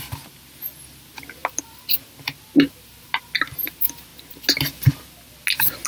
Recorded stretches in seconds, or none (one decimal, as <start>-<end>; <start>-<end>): 0.0-5.9